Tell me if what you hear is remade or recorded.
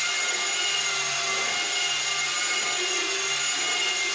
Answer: recorded